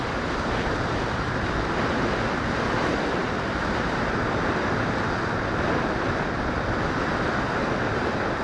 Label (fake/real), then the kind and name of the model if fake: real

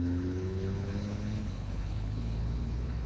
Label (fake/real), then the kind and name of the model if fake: fake, codec, HILCodec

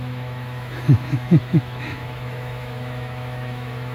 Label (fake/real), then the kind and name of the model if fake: fake, autoencoder, DAC-VAE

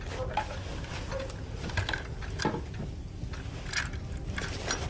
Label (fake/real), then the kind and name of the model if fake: real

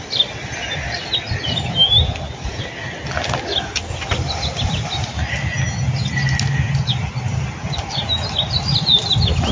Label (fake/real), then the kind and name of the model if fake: real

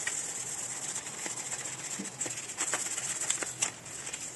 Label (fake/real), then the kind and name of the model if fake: real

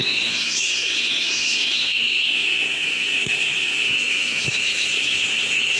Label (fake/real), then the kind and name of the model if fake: fake, codec, SNAC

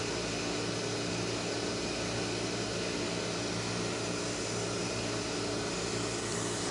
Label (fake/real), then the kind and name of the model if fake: real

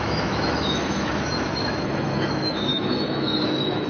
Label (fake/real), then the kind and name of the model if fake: fake, autoencoder, DAC-VAE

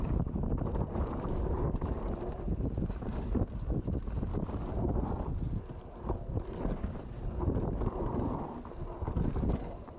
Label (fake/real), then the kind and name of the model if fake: real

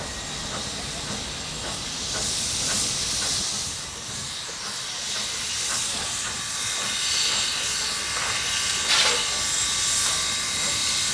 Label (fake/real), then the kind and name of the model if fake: real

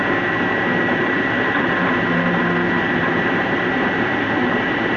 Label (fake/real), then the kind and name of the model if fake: fake, vocoder, BigVGAN v2